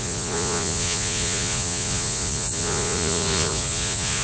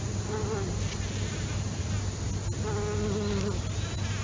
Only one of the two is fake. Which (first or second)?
first